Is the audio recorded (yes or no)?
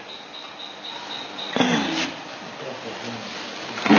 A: yes